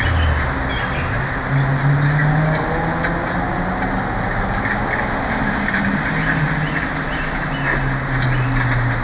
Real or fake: real